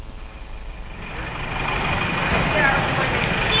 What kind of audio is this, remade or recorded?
recorded